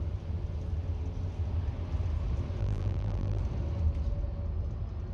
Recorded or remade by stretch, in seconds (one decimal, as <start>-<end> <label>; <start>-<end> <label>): 0.0-2.6 recorded; 2.6-3.4 remade; 3.4-5.1 recorded